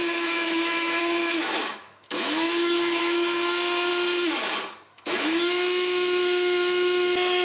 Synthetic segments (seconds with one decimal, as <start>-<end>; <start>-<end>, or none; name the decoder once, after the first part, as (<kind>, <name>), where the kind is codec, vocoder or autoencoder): 0.0-3.9 (autoencoder, DAC-VAE); 4.9-7.4